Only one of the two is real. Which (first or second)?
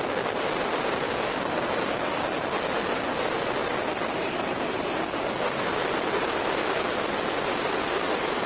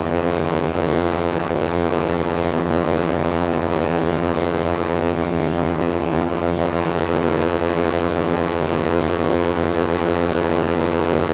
first